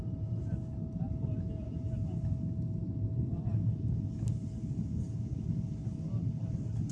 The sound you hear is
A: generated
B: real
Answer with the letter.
B